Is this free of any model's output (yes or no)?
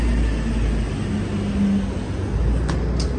yes